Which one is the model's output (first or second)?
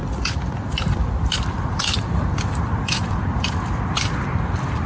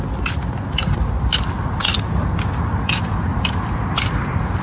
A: first